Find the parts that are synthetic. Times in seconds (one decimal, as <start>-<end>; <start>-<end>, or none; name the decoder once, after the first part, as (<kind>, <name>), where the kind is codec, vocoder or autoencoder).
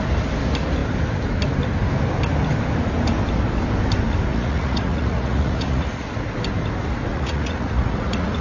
4.3-6.1 (vocoder, Vocos); 7.1-8.4